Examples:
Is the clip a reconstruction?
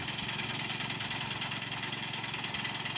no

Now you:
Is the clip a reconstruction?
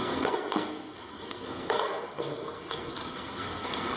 yes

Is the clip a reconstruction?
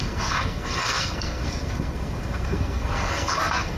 yes